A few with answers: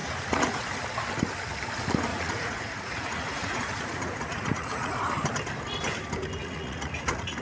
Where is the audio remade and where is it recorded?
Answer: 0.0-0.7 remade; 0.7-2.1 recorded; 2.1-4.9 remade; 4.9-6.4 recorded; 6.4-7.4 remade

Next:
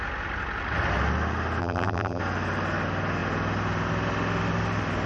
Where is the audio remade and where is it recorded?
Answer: 0.0-1.6 recorded; 1.6-2.2 remade; 2.2-5.1 recorded

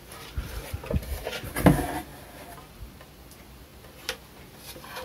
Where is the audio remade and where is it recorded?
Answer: 0.0-5.0 recorded